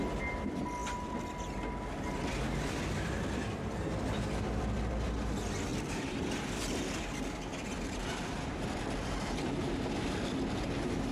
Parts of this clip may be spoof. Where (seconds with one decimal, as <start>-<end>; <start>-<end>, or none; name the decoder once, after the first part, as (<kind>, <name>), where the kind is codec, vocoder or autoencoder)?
5.7-6.9 (vocoder, BigVGAN v2); 8.0-10.3